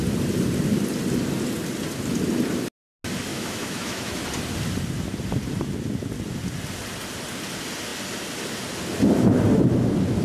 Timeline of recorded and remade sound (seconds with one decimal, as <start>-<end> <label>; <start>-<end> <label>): 0.0-3.3 recorded; 3.3-4.2 remade; 4.2-10.2 recorded